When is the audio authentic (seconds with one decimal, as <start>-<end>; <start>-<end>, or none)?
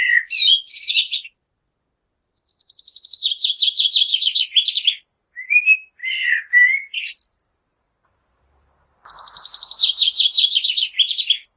0.0-2.5; 3.9-6.0; 7.6-11.6